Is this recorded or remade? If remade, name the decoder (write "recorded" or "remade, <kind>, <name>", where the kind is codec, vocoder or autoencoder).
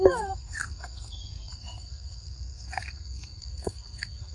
remade, codec, SNAC